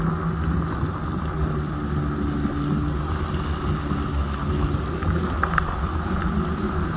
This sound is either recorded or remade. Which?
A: recorded